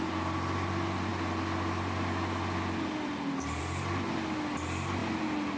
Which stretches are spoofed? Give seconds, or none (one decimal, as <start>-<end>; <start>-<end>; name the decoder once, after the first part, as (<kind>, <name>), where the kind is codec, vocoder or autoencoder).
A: none